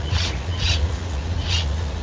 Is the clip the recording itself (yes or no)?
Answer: no